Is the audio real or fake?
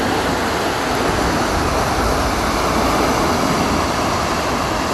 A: real